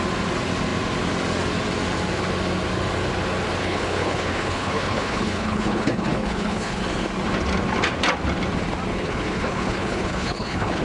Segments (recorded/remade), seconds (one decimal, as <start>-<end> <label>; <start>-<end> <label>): 0.0-3.6 recorded; 3.6-6.8 remade; 6.8-8.9 recorded; 8.9-10.8 remade